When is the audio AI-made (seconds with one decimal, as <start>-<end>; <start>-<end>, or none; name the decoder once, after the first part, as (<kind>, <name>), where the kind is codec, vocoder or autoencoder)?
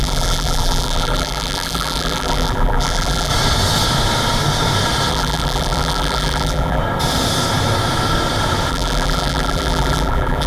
0.0-3.3 (vocoder, BigVGAN v2); 5.1-6.8; 8.7-10.5